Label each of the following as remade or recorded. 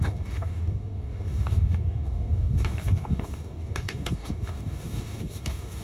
remade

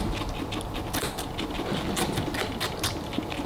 recorded